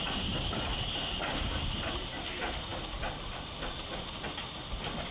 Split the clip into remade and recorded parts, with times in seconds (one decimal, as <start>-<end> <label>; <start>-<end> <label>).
0.0-5.1 recorded